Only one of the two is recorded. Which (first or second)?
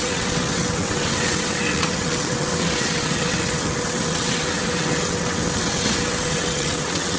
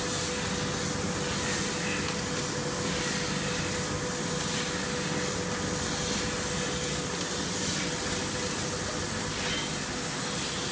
second